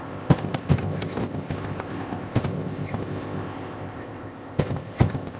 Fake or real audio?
fake